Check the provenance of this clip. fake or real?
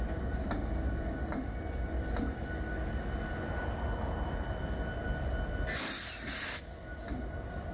real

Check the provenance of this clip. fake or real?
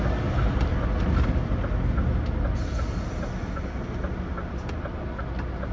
real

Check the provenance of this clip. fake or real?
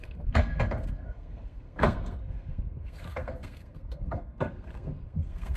fake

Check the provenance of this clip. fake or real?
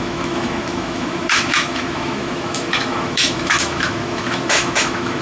fake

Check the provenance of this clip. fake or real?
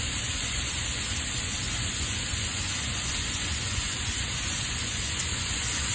fake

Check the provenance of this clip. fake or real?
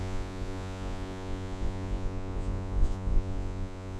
fake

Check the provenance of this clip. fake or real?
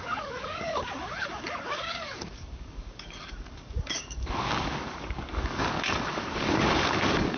fake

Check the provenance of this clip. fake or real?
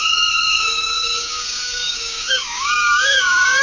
fake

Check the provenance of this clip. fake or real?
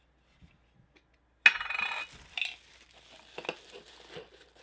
real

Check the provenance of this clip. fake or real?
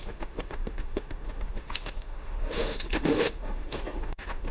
fake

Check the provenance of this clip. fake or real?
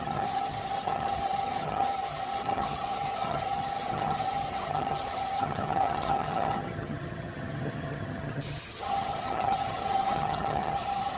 fake